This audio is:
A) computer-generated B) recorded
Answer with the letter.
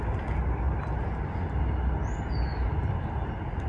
B